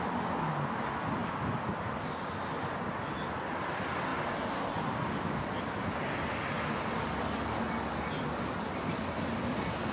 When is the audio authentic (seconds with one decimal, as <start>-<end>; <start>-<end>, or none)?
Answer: 0.0-9.9